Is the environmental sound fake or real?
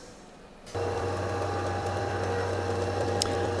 fake